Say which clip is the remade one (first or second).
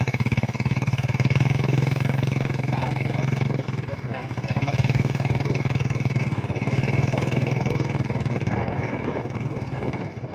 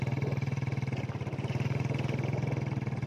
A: first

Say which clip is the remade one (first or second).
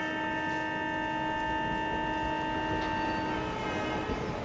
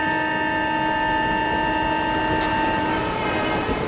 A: second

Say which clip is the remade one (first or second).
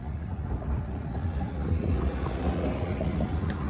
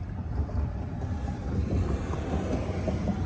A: first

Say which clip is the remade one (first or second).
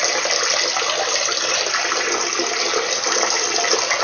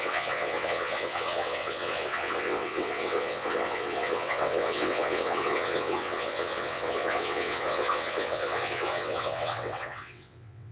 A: second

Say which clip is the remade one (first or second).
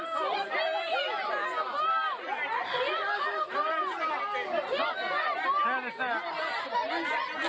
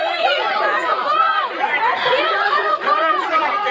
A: second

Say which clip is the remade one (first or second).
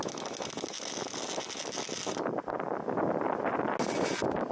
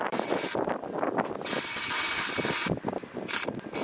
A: second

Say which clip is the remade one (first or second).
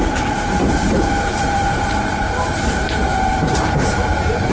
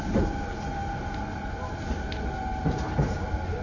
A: first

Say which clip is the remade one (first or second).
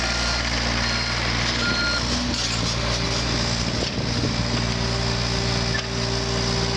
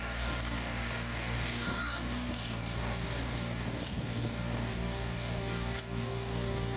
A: second